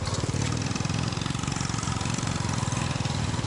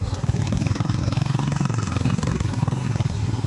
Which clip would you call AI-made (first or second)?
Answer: second